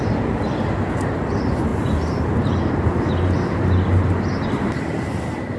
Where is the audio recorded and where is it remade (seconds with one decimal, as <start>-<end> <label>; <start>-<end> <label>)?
0.0-5.6 recorded